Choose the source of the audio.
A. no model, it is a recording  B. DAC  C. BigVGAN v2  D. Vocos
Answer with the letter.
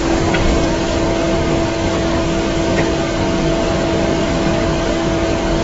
B